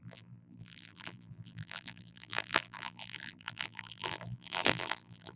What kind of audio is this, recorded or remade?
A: remade